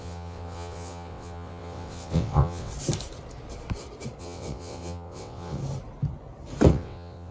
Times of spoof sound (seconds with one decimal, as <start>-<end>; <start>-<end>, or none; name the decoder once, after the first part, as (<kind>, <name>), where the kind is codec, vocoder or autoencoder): 0.0-2.7 (vocoder, WaveNeXt); 4.2-5.6; 6.7-7.3